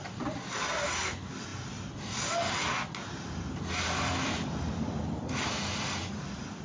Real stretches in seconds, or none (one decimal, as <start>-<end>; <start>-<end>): 1.5-3.4